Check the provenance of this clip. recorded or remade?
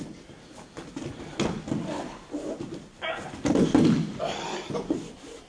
recorded